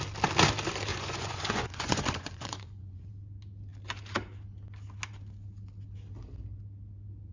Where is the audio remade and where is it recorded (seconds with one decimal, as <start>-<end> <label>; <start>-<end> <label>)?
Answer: 0.0-0.9 recorded; 0.9-3.1 remade; 3.1-7.3 recorded